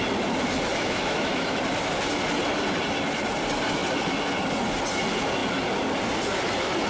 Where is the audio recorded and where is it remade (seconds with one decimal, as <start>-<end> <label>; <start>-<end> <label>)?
0.0-0.7 recorded; 0.7-1.6 remade; 1.6-6.9 recorded